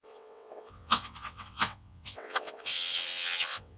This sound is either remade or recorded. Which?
remade